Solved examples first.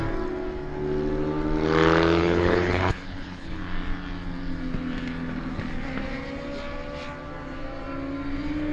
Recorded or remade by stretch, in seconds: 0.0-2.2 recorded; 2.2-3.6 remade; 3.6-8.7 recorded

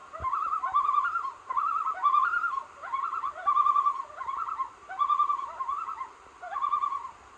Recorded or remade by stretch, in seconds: 0.0-1.5 remade; 1.5-3.1 recorded; 3.1-3.8 remade; 3.8-7.4 recorded

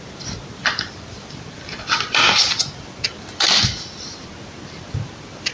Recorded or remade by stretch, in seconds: 0.0-0.6 recorded; 0.6-3.6 remade; 3.6-5.5 recorded

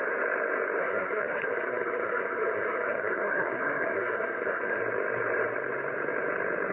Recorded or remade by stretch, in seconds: 0.0-0.8 recorded; 0.8-4.8 remade; 4.8-6.7 recorded

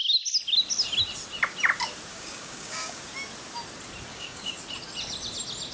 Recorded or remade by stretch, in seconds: 0.0-2.1 recorded; 2.1-3.0 remade; 3.0-4.1 recorded; 4.1-4.6 remade; 4.6-5.7 recorded

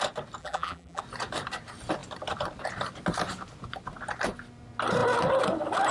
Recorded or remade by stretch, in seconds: 0.0-0.4 recorded; 0.4-1.0 remade; 1.0-5.9 recorded

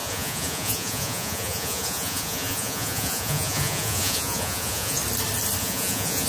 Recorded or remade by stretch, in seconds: 0.0-5.0 remade; 5.0-5.6 recorded; 5.6-6.3 remade

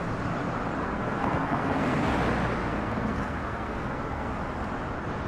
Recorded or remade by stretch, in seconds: 0.0-0.8 recorded; 0.8-2.2 remade; 2.2-2.6 recorded; 2.6-4.3 remade; 4.3-5.3 recorded